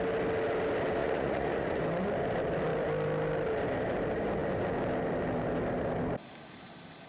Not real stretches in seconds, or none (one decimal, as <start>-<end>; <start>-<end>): 1.0-1.8